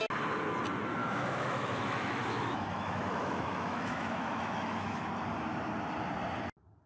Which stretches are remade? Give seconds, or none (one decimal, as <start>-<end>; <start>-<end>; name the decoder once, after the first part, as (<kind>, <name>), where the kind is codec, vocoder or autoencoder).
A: 1.0-5.1 (autoencoder, DAC-VAE)